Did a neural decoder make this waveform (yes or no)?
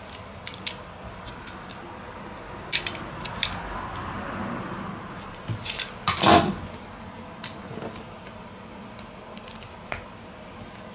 no